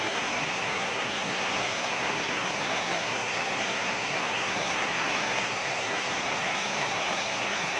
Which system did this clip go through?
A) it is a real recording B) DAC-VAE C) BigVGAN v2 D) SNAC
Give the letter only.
D